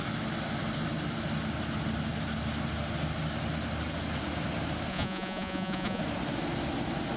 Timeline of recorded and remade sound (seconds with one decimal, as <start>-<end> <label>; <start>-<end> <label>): 0.0-4.9 recorded; 4.9-6.0 remade; 6.0-7.2 recorded